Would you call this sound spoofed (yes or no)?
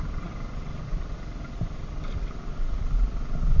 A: no